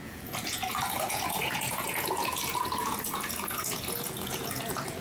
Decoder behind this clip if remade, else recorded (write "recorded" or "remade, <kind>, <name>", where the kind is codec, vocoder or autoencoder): remade, vocoder, Vocos